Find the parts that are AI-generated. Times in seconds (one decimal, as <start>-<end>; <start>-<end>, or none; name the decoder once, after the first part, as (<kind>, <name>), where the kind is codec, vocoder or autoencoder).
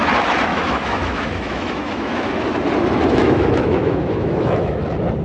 0.5-2.3 (autoencoder, DAC-VAE); 3.2-4.8